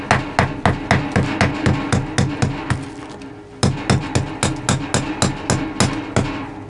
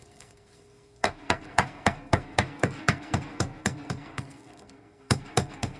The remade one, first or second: second